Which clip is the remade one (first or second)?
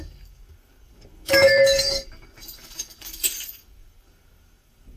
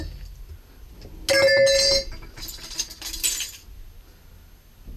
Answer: first